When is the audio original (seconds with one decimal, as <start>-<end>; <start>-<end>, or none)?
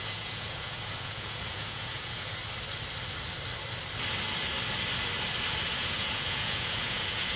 2.4-5.7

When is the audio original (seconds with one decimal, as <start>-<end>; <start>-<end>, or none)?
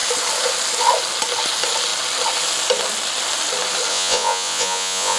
0.0-3.9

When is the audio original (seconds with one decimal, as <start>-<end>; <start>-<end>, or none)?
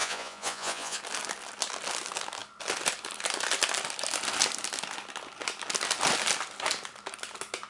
1.0-7.7